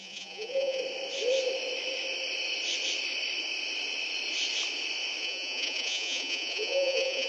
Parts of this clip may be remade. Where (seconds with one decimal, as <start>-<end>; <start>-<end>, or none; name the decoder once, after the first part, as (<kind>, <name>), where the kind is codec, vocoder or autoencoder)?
0.0-0.8 (vocoder, Vocos); 5.2-7.3